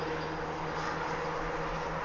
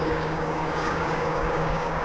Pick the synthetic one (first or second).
second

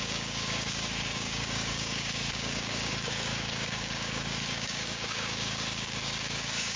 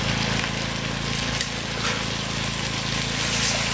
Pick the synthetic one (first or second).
first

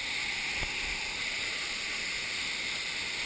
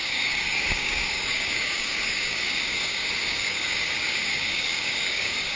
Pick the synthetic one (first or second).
second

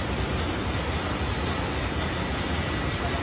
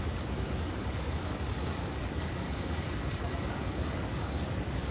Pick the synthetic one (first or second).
second